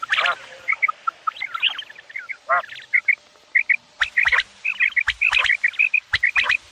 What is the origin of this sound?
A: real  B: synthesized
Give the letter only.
A